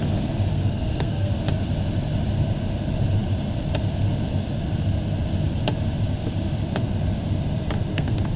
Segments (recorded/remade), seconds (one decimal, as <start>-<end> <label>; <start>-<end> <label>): 0.0-0.5 recorded; 0.5-1.3 remade; 1.3-7.9 recorded; 7.9-8.4 remade